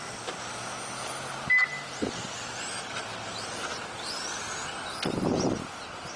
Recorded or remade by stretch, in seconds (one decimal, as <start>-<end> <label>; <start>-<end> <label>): 0.0-6.2 recorded